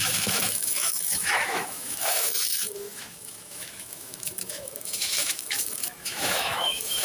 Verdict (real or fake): fake